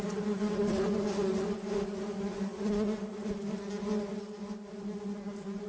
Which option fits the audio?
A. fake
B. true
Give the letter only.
B